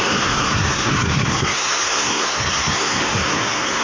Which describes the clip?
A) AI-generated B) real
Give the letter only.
A